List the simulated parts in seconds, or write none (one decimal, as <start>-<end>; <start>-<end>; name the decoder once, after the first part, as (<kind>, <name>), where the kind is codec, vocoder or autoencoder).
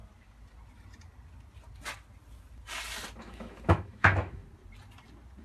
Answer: 3.2-4.4 (autoencoder, DAC-VAE)